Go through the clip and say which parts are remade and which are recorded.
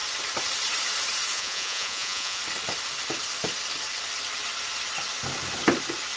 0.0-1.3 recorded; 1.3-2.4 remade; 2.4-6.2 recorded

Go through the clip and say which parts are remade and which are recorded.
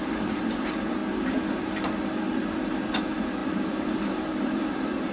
0.0-1.0 remade; 1.0-3.0 recorded; 3.0-5.1 remade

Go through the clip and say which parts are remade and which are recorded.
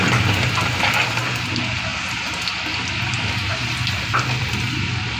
0.0-5.2 recorded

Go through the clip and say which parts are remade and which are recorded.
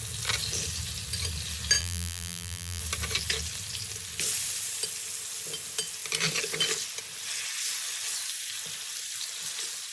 0.0-1.8 recorded; 1.8-2.8 remade; 2.8-9.9 recorded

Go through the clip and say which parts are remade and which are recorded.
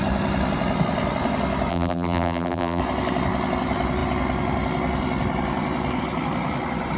0.0-1.7 recorded; 1.7-2.8 remade; 2.8-7.0 recorded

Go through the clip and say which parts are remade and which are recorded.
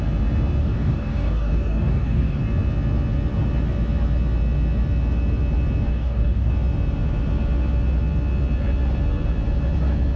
0.0-0.6 recorded; 0.6-2.4 remade; 2.4-5.9 recorded; 5.9-6.5 remade; 6.5-10.2 recorded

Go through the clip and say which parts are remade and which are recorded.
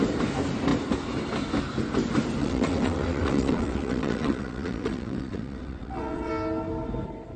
0.0-2.4 recorded; 2.4-6.3 remade; 6.3-7.4 recorded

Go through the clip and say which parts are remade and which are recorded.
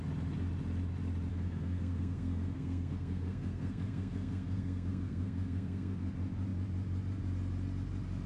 0.0-1.3 recorded; 1.3-6.1 remade; 6.1-8.3 recorded